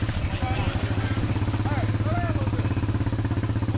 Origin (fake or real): real